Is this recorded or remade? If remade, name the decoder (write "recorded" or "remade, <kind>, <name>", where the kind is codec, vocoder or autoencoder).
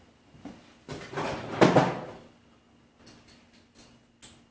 recorded